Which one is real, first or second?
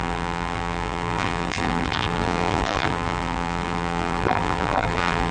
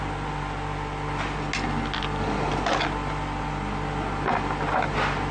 second